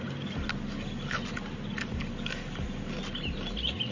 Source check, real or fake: real